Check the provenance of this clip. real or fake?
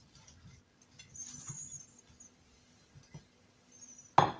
real